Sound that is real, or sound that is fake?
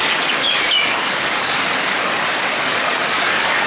fake